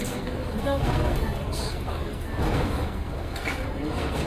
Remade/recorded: remade